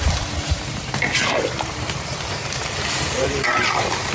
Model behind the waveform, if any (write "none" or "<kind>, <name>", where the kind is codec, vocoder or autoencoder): vocoder, BigVGAN v2